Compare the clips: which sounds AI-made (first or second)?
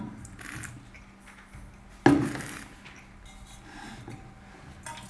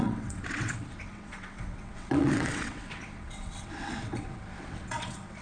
second